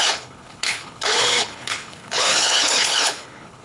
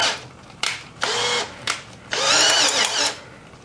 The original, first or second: second